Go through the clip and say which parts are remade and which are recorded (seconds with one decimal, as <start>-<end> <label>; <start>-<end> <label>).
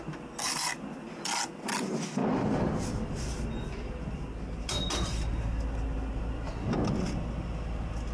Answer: 0.0-8.1 recorded